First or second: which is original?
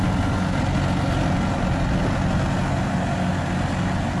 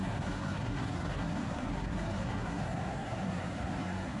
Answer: first